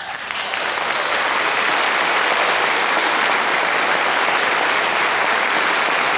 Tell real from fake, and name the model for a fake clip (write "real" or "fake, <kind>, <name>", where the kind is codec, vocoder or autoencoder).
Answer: real